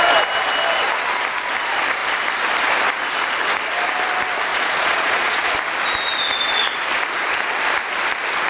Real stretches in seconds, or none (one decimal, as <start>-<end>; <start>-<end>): 0.0-4.5; 5.5-8.5